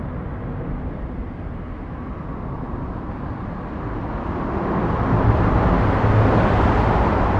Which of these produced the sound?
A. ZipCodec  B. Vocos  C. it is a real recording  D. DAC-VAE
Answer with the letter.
C